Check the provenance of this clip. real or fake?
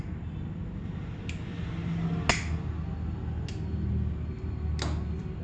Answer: real